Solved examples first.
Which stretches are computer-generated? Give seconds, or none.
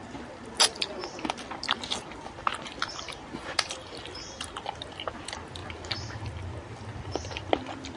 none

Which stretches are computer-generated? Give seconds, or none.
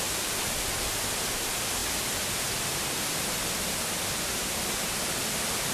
none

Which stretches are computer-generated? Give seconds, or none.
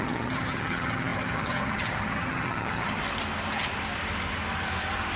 0.0-3.0 (vocoder, HiFi-GAN)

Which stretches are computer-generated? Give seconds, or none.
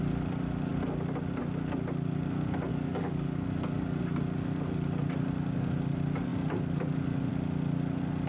2.7-4.0 (codec, DAC)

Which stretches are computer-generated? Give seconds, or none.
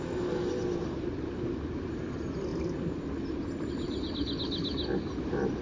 none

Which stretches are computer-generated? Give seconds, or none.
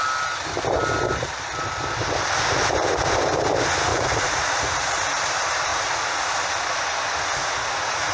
3.9-5.2 (vocoder, Vocos); 5.7-6.2; 7.4-8.1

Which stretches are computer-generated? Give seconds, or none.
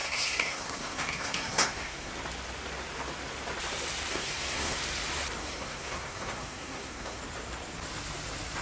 0.0-2.1 (codec, SNAC); 4.1-4.8; 5.4-7.2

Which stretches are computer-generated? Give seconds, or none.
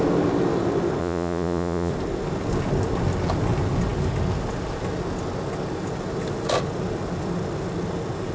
1.0-1.9 (vocoder, Vocos)